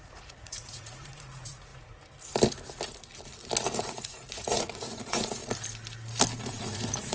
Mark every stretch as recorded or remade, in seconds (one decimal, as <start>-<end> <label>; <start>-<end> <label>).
0.0-1.7 remade; 1.7-3.8 recorded; 3.8-5.4 remade; 5.4-6.4 recorded; 6.4-7.1 remade